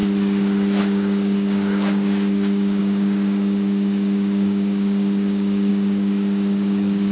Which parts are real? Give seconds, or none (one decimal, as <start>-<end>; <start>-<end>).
0.0-0.8